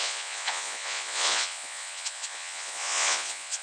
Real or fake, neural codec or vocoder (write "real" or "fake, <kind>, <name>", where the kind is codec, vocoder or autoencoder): fake, vocoder, Vocos